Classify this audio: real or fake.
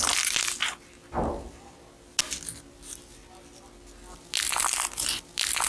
real